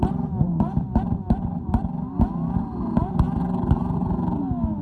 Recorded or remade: recorded